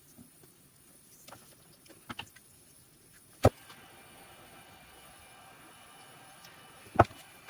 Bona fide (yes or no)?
yes